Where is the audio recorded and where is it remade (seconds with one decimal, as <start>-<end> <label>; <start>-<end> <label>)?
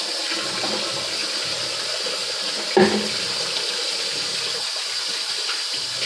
0.0-1.2 recorded; 1.2-4.8 remade; 4.8-6.0 recorded